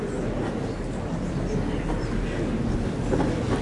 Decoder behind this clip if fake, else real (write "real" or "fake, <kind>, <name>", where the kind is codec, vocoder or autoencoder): real